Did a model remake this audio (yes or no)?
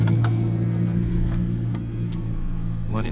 yes